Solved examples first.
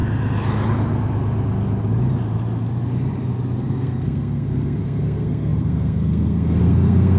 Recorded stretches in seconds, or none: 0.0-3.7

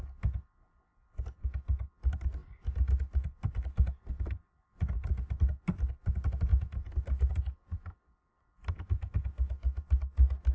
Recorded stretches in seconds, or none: 0.0-10.5

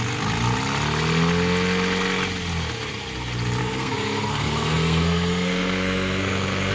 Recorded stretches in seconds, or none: 0.0-3.6

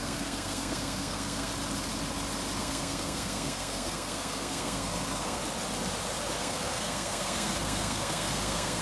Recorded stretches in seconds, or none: 1.5-2.6; 5.4-6.4

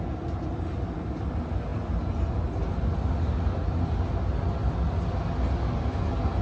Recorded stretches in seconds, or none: 0.0-6.4

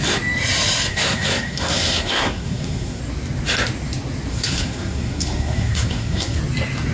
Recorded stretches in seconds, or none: 0.0-0.9; 3.0-4.3; 6.4-6.9

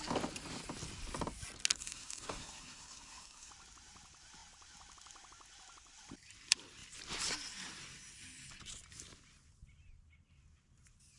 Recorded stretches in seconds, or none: 0.0-1.8; 3.5-11.2

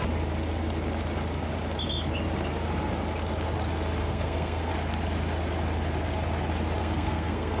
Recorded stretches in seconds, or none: 0.0-4.0; 4.7-6.8